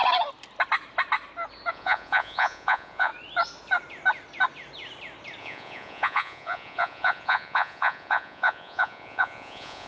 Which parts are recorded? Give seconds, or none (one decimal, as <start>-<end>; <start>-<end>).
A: 0.0-1.7; 3.1-5.4